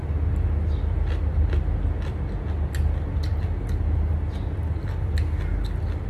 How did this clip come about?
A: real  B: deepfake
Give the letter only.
A